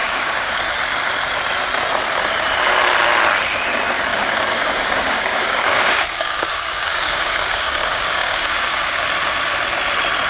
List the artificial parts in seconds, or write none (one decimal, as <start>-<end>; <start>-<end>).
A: 0.0-0.5; 4.1-9.0